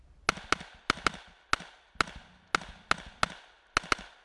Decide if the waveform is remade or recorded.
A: recorded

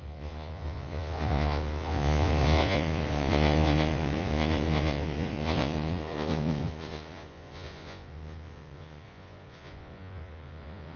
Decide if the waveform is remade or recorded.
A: remade